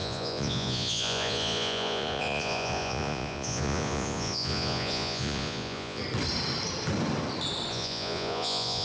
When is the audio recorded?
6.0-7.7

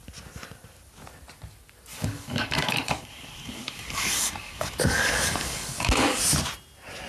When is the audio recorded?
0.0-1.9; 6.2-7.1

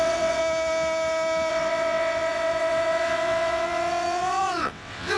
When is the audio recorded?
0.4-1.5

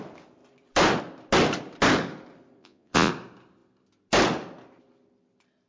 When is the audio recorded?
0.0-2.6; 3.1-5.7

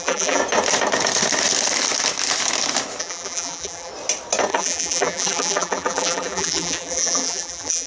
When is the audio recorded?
0.4-3.0; 3.9-4.5